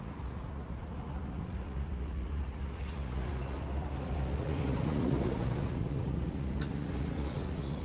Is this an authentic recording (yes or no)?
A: no